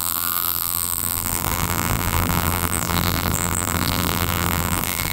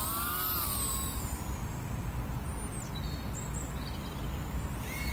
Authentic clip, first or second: second